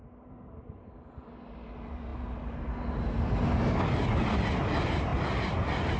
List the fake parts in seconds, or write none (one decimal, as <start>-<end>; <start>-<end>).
none